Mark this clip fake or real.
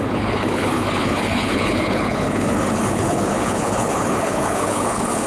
fake